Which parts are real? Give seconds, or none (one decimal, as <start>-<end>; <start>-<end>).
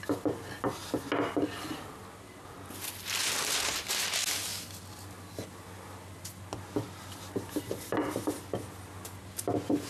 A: 0.0-9.9